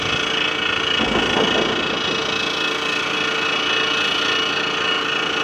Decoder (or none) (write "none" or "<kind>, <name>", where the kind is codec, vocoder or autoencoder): none